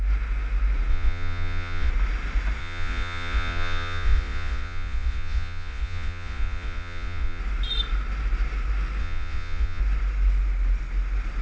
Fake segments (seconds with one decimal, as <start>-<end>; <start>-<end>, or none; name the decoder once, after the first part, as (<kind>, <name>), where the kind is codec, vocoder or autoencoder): 0.9-1.9 (vocoder, Vocos); 2.6-7.4; 9.0-9.8